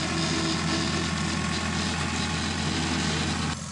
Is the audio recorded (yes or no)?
yes